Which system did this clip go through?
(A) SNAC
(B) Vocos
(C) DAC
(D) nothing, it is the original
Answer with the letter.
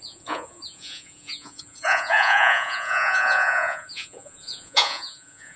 B